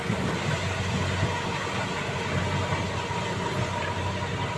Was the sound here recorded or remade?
recorded